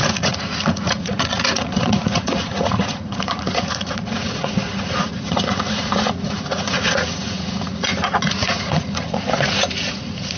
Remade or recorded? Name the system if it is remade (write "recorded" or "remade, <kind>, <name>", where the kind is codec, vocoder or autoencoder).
remade, vocoder, Vocos